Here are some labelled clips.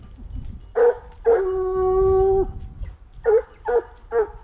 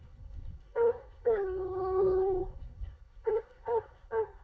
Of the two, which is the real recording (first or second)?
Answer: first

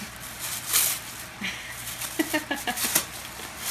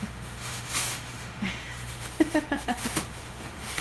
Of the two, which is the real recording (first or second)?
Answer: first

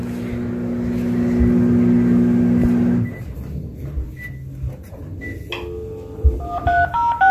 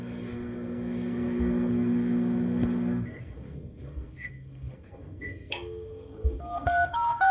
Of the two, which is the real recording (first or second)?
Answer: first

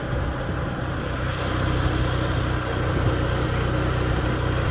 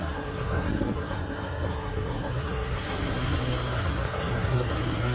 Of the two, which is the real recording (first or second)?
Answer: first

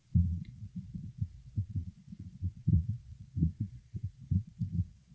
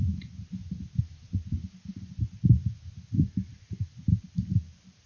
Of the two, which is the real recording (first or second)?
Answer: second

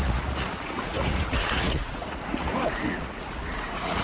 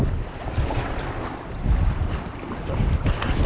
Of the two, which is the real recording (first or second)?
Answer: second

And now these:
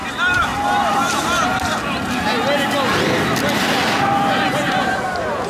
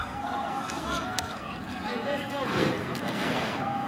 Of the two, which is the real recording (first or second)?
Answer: first